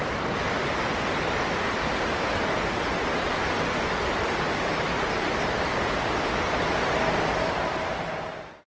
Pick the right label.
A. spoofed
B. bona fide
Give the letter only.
B